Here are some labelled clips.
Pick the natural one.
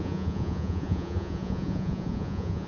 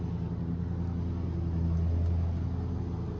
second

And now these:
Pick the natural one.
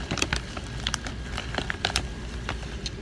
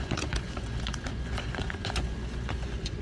first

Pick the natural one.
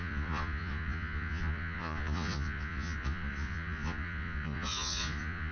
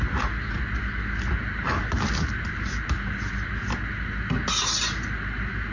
second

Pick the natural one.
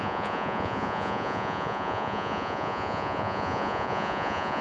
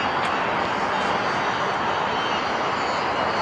second